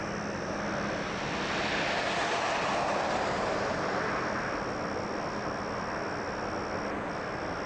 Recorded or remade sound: recorded